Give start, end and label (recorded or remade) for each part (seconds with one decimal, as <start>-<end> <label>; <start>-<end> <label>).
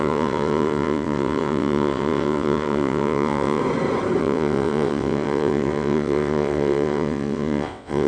0.0-3.6 remade; 3.6-4.2 recorded; 4.2-8.1 remade